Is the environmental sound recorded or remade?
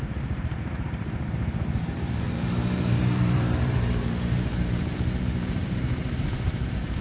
remade